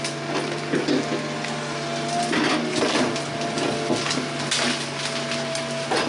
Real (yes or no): yes